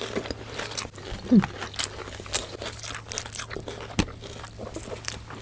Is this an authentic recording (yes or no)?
yes